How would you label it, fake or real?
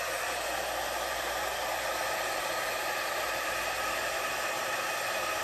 fake